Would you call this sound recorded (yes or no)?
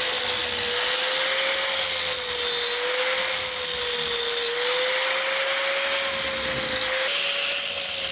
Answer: yes